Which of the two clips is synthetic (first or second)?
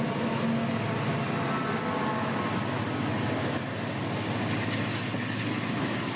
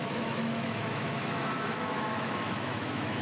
second